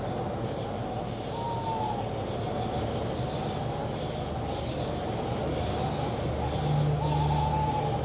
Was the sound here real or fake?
real